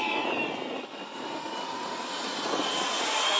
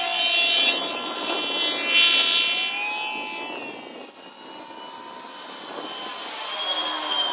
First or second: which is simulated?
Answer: first